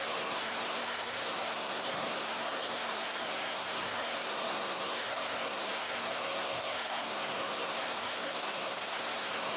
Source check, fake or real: fake